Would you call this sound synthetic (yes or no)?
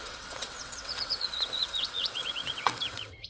yes